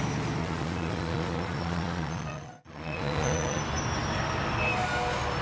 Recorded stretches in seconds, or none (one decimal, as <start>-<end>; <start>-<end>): 0.0-0.4; 3.6-5.4